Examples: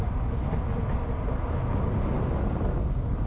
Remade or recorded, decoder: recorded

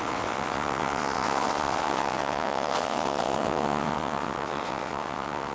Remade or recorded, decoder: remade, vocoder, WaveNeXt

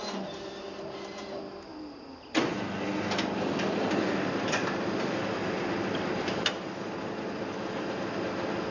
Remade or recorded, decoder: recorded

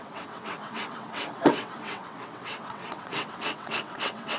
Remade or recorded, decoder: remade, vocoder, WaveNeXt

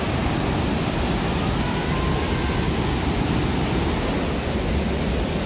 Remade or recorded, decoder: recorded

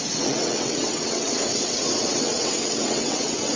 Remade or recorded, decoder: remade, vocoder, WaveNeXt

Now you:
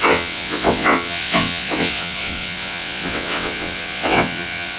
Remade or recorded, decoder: remade, vocoder, WaveNeXt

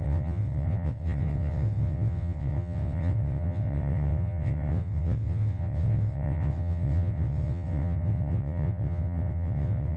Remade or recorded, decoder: remade, vocoder, WaveNeXt